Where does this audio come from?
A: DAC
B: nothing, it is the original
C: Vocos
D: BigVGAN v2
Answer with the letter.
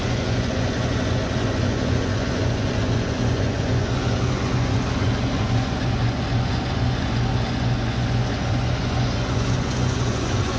C